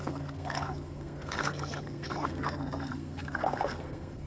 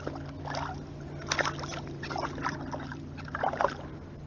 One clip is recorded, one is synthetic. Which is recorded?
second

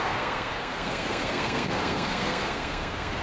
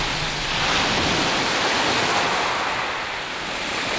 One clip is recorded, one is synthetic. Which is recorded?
second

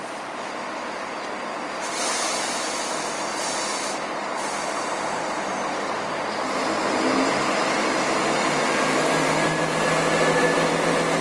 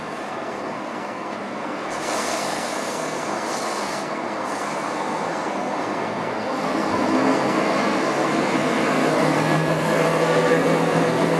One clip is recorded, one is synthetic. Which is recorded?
first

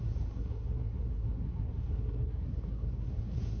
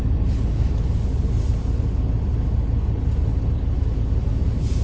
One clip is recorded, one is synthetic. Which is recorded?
second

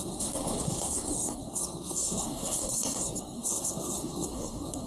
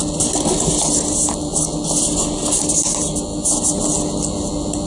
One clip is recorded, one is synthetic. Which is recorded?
second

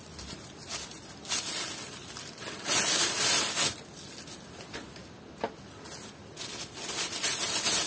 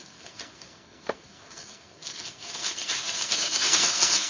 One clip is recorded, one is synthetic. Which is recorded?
first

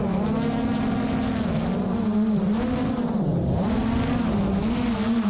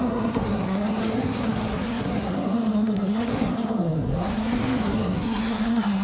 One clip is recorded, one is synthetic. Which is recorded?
first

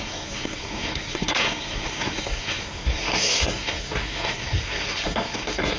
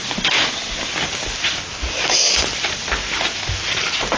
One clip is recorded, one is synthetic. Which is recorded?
second